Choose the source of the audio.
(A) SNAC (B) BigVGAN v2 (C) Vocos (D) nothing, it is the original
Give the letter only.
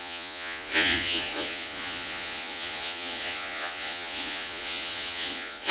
C